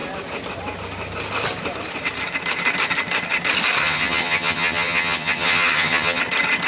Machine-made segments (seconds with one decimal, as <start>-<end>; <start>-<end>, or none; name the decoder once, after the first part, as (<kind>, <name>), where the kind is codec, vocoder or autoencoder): 3.8-6.2 (vocoder, HiFi-GAN)